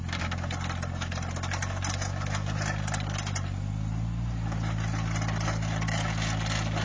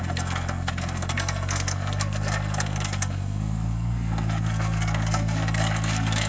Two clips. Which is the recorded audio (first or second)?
first